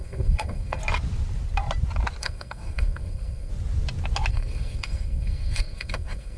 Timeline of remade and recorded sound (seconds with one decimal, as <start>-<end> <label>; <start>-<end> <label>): 0.0-0.8 remade; 0.8-2.2 recorded; 2.2-3.5 remade; 3.5-4.3 recorded; 4.3-6.4 remade